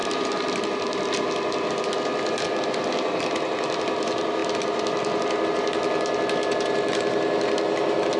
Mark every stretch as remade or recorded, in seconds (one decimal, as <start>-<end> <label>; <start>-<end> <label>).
0.0-1.7 remade; 1.7-8.2 recorded